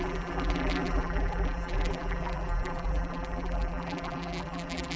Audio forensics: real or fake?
fake